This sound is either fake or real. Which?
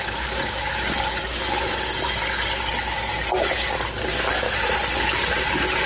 real